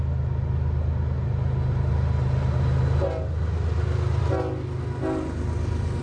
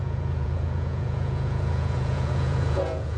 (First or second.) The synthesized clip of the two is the second